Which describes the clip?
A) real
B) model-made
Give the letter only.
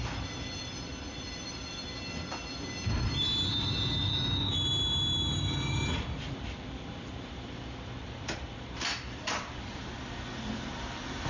B